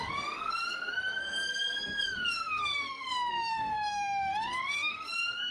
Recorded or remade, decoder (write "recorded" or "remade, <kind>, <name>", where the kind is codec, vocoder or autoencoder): remade, codec, SNAC